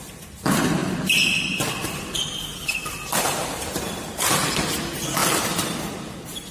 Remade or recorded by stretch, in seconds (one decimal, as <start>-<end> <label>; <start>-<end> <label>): 0.0-6.5 recorded